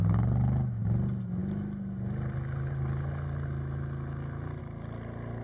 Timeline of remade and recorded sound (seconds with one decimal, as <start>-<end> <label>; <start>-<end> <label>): 0.0-5.4 recorded